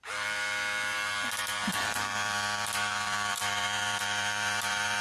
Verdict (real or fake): fake